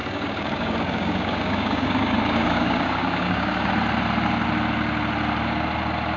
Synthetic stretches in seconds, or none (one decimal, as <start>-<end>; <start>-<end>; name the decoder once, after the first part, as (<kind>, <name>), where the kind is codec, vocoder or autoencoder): 0.0-3.7 (codec, DAC)